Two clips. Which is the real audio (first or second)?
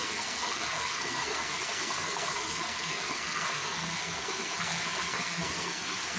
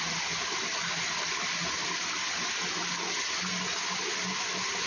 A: second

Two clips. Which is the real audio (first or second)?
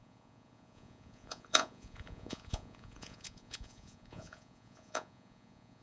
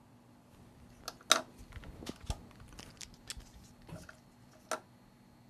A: second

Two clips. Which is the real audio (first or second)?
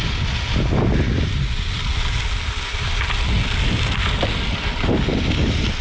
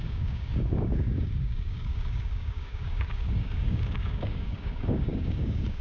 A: first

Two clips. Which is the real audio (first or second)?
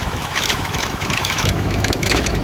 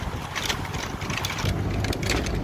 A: second